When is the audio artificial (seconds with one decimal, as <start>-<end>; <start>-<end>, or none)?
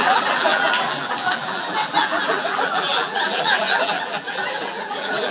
0.0-5.3